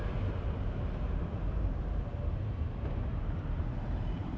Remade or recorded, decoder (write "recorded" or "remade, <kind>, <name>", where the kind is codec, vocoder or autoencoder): remade, vocoder, BigVGAN v2